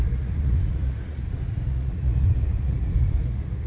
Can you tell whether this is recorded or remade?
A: remade